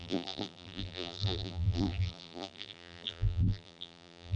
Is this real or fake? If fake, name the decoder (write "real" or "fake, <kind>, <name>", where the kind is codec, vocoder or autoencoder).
fake, vocoder, BigVGAN v2